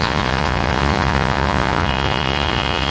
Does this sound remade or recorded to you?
remade